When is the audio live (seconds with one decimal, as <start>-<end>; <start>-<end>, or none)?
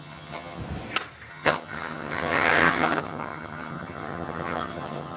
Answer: 0.6-1.3